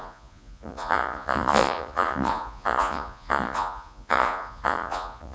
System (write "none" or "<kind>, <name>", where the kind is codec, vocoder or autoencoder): vocoder, Vocos